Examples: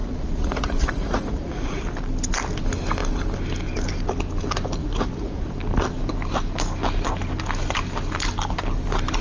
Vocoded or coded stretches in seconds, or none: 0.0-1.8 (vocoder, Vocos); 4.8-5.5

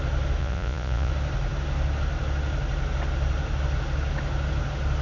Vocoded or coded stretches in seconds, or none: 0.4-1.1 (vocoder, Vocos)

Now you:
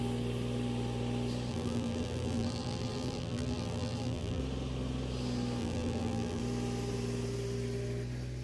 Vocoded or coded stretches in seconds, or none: 1.5-4.4 (vocoder, BigVGAN v2); 5.6-6.4

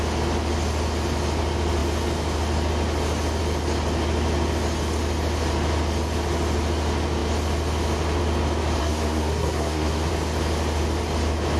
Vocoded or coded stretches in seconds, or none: 8.8-10.1 (codec, SNAC)

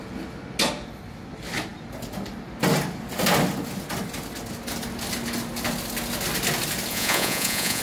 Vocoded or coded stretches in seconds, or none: 6.9-7.8 (vocoder, Vocos)